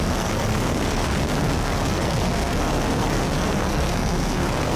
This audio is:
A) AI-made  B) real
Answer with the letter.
A